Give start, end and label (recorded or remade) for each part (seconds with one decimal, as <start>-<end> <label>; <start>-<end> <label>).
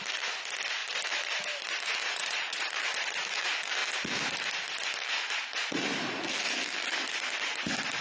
0.0-2.0 recorded; 2.0-2.6 remade; 2.6-8.0 recorded